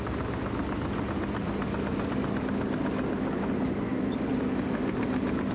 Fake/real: real